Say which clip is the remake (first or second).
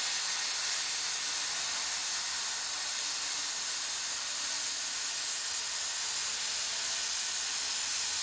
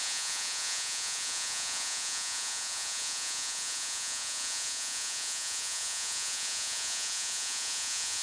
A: second